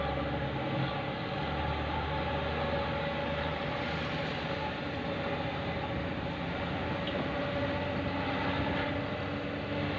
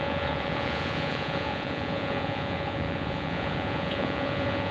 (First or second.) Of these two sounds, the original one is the first